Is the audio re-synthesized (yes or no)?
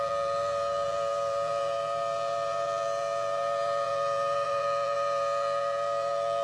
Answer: yes